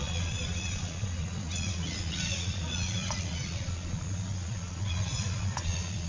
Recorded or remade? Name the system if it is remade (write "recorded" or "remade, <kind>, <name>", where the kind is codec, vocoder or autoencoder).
remade, vocoder, Vocos